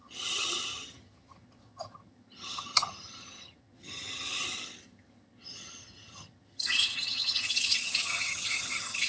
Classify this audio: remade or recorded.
remade